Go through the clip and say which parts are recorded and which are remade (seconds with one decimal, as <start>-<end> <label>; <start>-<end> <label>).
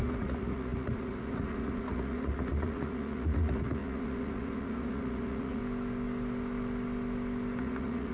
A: 0.0-5.6 remade; 5.6-7.6 recorded; 7.6-8.1 remade